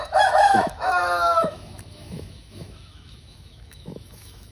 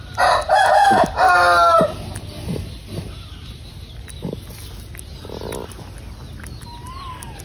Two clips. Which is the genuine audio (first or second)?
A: second